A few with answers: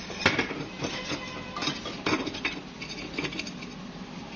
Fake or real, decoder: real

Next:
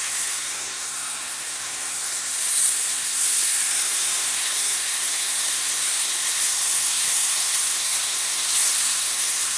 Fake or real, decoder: fake, codec, SNAC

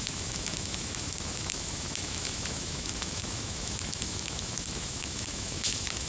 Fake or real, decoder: fake, autoencoder, DAC-VAE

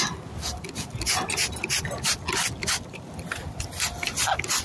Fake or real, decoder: real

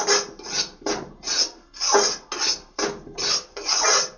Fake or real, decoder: real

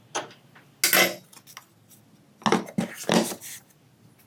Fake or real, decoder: real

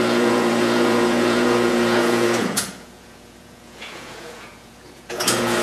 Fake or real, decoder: fake, vocoder, Vocos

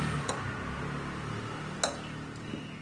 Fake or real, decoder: real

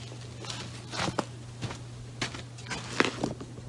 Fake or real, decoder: real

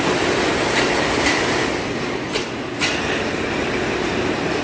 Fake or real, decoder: real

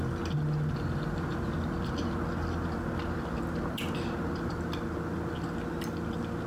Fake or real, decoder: real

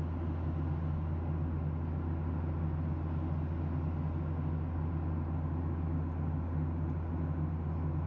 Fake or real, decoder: real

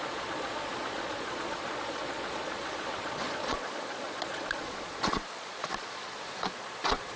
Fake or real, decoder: fake, vocoder, Vocos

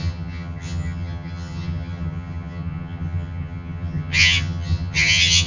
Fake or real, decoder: fake, vocoder, HiFi-GAN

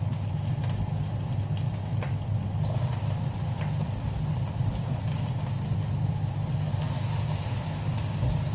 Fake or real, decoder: real